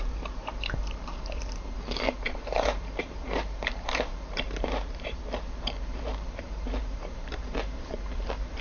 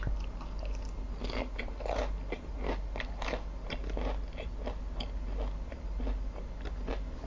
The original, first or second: second